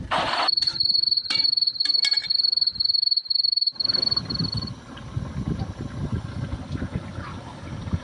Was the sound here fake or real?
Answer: real